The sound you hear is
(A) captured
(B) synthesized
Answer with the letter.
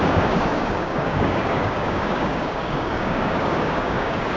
B